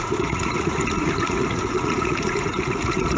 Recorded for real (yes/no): no